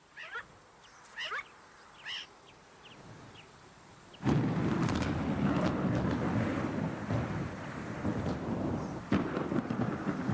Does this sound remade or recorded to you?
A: recorded